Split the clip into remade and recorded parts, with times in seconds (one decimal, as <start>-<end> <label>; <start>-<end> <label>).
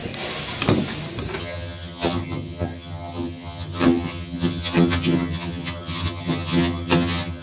0.0-1.4 recorded; 1.4-7.4 remade